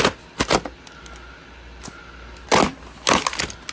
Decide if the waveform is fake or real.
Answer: real